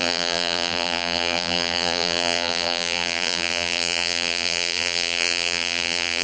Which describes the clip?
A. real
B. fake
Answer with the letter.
B